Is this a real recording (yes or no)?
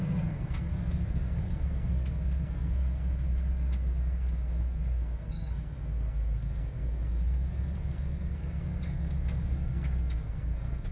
no